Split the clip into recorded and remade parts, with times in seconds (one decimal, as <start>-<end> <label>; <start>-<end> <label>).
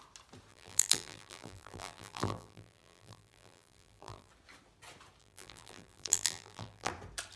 0.0-0.5 recorded; 0.5-4.3 remade; 4.3-5.2 recorded; 5.2-6.9 remade; 6.9-7.4 recorded